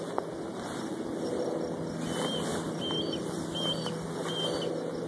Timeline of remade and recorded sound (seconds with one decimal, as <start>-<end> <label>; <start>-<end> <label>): 0.0-5.1 recorded

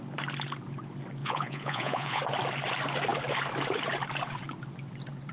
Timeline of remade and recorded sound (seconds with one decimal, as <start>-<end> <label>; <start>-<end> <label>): 0.0-1.2 recorded; 1.2-2.2 remade; 2.2-5.3 recorded